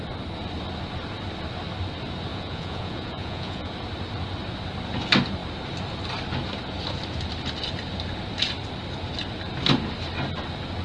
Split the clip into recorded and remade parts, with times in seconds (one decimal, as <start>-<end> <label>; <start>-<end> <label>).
0.0-2.3 recorded; 2.3-3.7 remade; 3.7-10.8 recorded